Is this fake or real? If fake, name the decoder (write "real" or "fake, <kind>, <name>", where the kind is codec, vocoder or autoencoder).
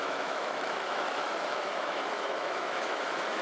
fake, autoencoder, DAC-VAE